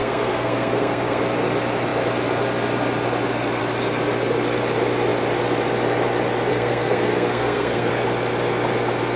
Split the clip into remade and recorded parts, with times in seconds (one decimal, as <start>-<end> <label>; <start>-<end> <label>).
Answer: 0.0-1.2 remade; 1.2-6.5 recorded; 6.5-7.9 remade; 7.9-9.2 recorded